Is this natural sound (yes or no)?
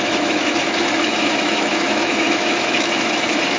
no